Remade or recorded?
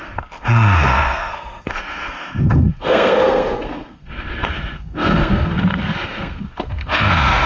remade